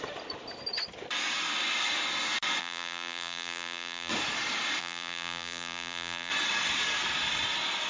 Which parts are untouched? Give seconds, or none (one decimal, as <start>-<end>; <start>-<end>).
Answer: 0.0-2.6; 4.1-4.8; 6.3-7.9